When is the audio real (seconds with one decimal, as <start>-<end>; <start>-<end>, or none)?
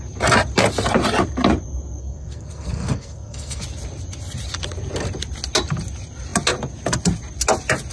0.0-2.0; 3.6-7.9